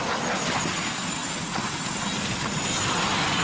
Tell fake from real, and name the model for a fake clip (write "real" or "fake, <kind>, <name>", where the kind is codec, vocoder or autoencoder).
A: real